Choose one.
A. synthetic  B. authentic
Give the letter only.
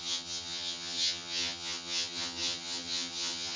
A